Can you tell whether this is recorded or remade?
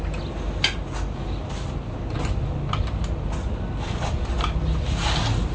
recorded